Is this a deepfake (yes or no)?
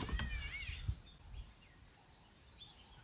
no